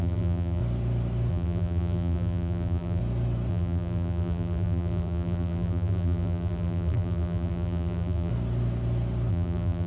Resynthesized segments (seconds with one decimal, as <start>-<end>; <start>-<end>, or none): 0.0-0.6; 1.3-3.0; 3.5-8.3; 9.3-9.9